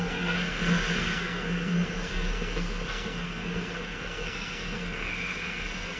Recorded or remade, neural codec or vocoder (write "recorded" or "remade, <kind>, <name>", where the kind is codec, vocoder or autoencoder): remade, codec, SNAC